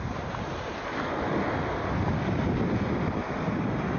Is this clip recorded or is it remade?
recorded